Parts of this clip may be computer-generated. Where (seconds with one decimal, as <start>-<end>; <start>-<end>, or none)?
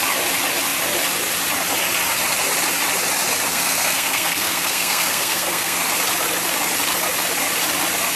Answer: 3.5-5.8